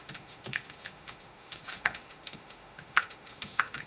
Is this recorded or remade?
remade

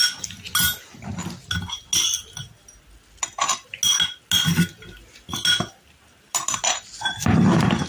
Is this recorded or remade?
recorded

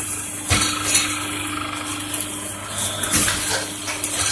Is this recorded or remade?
recorded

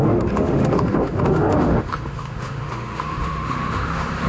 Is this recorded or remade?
remade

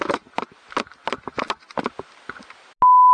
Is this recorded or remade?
recorded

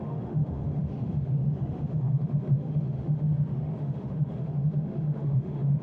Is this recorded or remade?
remade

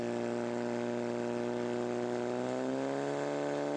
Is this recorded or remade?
recorded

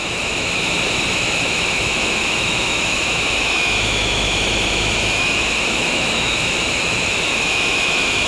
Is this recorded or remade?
remade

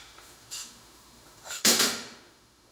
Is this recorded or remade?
remade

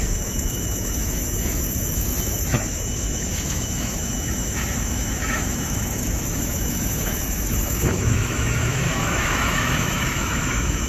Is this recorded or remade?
remade